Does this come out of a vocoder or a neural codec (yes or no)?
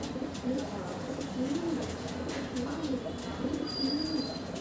no